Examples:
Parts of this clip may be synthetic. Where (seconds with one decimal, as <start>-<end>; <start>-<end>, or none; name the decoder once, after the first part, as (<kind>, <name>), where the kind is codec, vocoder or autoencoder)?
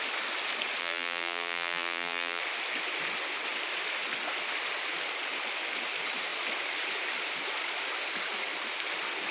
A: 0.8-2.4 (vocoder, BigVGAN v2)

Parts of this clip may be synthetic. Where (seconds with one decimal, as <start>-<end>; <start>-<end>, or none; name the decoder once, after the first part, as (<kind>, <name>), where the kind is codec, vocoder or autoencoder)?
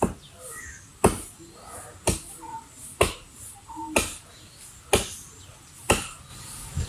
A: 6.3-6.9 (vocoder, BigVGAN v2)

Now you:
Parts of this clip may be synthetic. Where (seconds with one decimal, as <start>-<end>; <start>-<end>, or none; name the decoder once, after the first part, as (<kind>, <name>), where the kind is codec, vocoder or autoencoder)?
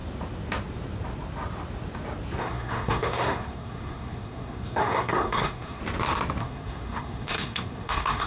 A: 2.4-5.8 (codec, SNAC); 6.4-8.3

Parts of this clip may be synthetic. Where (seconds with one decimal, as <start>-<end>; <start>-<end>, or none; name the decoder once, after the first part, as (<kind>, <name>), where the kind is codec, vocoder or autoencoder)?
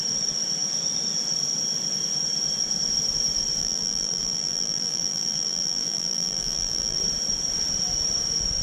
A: 3.6-7.0 (vocoder, BigVGAN v2)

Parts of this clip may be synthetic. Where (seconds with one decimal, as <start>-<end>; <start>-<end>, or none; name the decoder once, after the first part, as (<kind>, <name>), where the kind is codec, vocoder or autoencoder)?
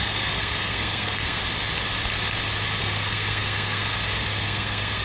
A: 0.0-1.4 (codec, SNAC); 2.8-5.0